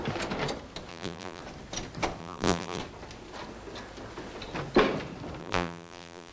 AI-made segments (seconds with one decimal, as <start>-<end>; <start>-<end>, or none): 0.9-1.4; 2.2-2.8; 5.4-6.3